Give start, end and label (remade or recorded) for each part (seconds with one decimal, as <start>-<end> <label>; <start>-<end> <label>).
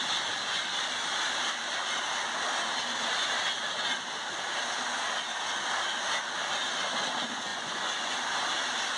0.0-7.5 recorded; 7.5-8.1 remade; 8.1-9.0 recorded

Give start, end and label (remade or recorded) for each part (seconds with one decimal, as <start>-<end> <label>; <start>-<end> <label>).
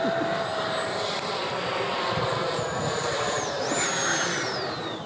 0.0-5.1 recorded